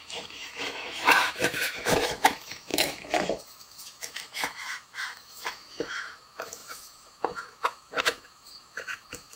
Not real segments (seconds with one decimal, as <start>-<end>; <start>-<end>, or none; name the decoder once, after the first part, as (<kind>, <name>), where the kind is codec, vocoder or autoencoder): 0.0-9.3 (autoencoder, DAC-VAE)